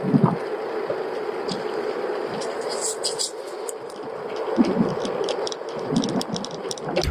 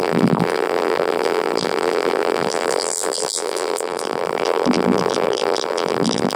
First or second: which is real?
first